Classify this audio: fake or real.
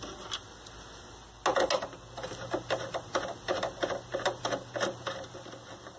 real